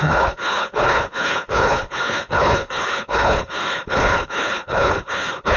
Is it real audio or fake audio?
fake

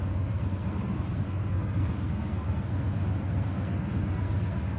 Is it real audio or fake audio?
fake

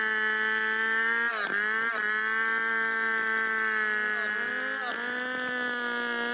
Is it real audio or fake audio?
real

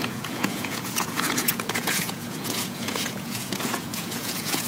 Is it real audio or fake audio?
fake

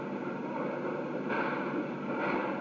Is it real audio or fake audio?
real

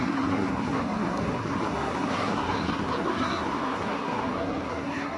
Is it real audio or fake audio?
fake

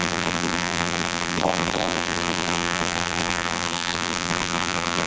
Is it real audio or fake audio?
fake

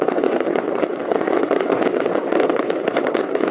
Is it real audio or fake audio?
fake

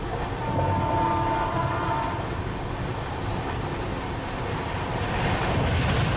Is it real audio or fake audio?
real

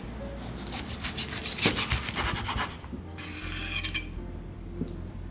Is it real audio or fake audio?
real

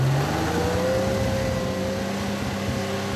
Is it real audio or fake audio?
real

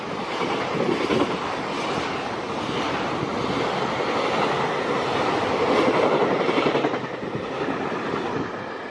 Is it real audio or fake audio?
real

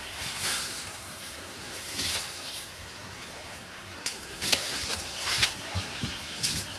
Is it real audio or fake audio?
fake